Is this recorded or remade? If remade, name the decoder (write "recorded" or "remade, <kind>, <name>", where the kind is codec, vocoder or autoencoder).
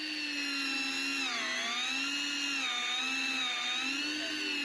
recorded